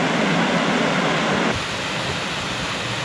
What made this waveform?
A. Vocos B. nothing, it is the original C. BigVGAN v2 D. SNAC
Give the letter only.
B